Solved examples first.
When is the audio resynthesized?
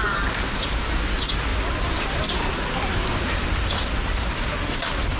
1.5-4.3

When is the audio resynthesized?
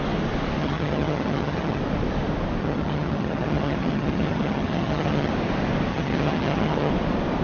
0.6-1.8; 2.6-5.3; 5.9-6.9